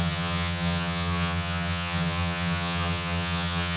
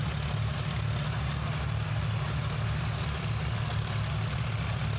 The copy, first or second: first